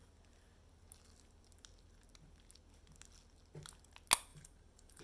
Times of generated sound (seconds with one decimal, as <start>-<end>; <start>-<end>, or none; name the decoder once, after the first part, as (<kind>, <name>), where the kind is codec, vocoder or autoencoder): 4.3-5.0 (vocoder, BigVGAN v2)